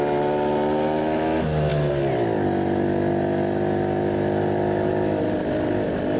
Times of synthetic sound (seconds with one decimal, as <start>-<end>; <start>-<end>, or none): none

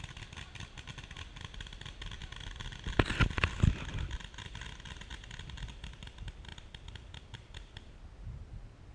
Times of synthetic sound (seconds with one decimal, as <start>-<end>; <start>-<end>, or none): none

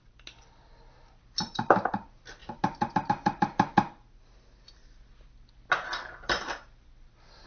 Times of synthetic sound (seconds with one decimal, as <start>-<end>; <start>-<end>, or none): none